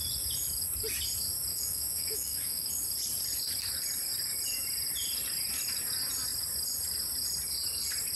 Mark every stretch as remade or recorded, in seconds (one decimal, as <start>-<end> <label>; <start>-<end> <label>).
0.0-1.5 recorded; 1.5-2.7 remade; 2.7-8.2 recorded